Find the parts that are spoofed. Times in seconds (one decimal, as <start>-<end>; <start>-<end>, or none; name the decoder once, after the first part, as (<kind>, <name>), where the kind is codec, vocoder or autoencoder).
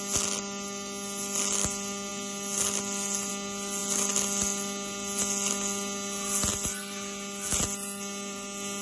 none